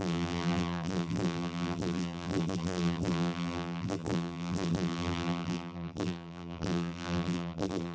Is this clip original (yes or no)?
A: no